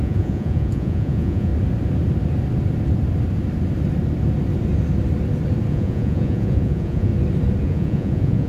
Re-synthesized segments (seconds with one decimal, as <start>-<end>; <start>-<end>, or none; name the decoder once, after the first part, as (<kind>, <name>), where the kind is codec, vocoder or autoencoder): 0.0-1.5 (vocoder, Vocos); 5.7-7.1; 7.6-8.5